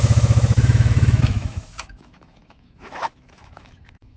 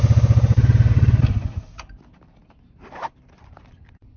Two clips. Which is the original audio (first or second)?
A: second